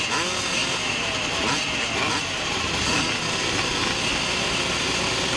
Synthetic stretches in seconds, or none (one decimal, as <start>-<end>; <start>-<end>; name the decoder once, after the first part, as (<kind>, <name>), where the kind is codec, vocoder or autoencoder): none